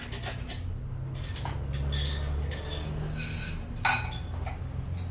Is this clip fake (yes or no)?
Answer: no